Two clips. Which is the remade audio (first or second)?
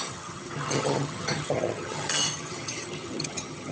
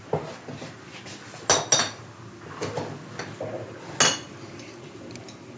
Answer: first